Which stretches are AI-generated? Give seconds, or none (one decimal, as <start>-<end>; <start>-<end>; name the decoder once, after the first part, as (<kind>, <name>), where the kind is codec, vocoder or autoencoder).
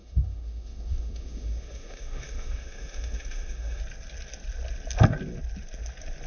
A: 0.0-3.8 (autoencoder, DAC-VAE)